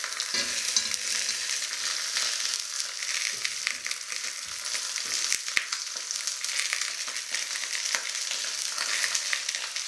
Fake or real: real